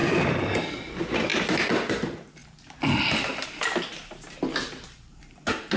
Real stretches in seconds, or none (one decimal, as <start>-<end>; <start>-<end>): 0.0-5.8